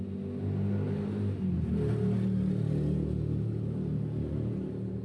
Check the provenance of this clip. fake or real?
real